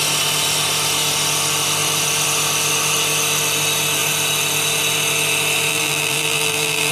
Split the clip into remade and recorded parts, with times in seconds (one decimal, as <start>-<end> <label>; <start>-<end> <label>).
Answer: 0.0-5.7 recorded; 5.7-6.9 remade